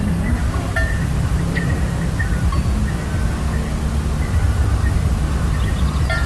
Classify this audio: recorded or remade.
recorded